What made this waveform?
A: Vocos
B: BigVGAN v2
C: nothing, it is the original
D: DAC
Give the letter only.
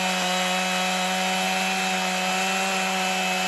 C